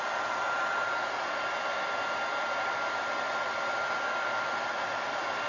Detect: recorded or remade recorded